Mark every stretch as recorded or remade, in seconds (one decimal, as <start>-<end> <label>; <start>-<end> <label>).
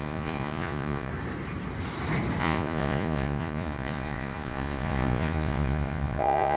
0.0-1.1 remade; 1.1-2.4 recorded; 2.4-6.6 remade